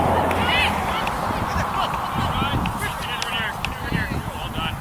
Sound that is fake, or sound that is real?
real